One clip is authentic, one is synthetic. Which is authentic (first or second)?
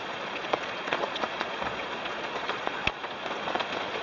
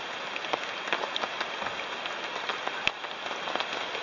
second